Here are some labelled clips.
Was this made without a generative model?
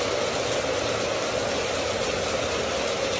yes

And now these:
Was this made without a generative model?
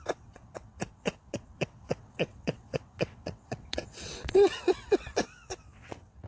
no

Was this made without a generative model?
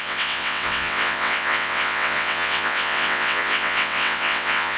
no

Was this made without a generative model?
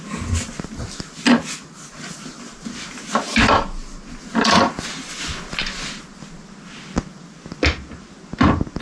yes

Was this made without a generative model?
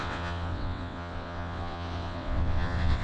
no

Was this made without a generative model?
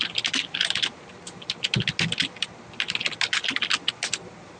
yes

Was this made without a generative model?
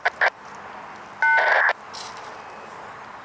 yes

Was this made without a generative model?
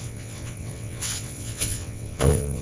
no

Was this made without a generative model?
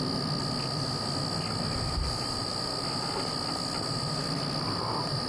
yes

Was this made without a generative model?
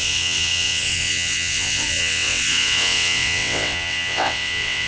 no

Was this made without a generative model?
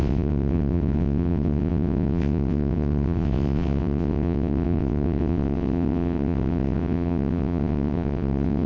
no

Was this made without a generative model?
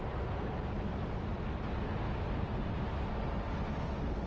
yes